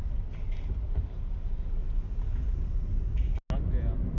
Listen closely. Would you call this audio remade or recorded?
recorded